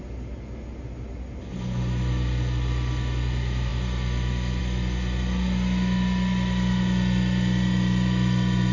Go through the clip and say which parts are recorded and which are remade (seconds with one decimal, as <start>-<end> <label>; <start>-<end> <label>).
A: 0.0-8.7 recorded